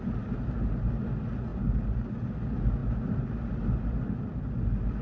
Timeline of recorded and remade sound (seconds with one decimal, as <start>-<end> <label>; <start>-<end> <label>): 0.0-5.0 recorded